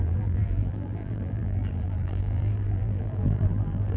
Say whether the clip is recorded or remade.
remade